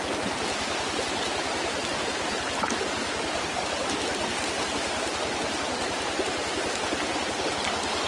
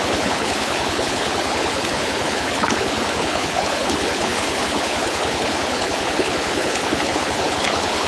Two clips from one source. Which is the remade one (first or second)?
second